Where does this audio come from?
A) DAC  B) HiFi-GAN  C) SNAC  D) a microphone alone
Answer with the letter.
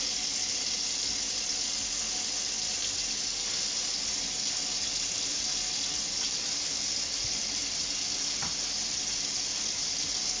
D